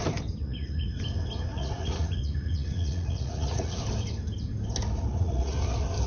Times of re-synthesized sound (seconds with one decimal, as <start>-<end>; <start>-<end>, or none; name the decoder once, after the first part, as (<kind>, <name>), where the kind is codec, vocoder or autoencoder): 0.4-1.0 (vocoder, Vocos); 1.5-3.8; 5.1-5.6